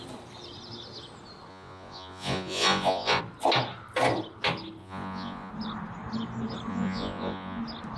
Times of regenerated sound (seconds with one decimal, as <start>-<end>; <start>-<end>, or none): 1.5-3.2; 4.8-5.5; 6.7-7.6